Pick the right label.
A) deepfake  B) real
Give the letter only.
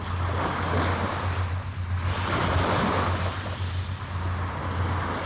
B